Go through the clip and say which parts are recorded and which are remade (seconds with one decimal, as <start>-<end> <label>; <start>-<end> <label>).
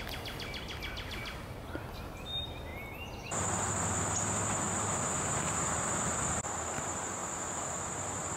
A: 0.0-8.4 recorded